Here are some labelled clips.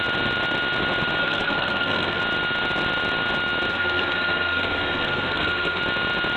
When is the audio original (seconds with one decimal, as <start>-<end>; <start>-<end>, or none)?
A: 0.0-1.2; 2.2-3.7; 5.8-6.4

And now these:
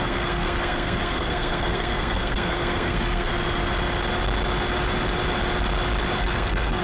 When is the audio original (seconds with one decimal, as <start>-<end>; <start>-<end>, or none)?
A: 3.3-6.2

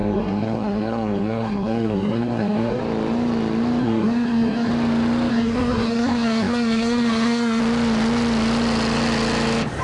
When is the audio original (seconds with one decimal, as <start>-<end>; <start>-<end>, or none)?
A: 2.8-3.8; 4.7-5.3; 7.6-9.8